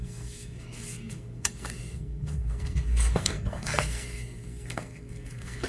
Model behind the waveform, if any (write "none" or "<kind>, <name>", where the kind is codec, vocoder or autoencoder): codec, SNAC